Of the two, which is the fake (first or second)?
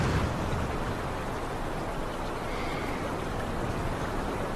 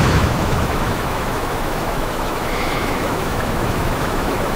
second